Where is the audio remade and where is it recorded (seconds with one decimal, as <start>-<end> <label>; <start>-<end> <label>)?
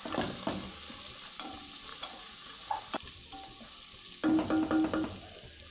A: 0.0-1.9 recorded; 1.9-2.8 remade; 2.8-5.7 recorded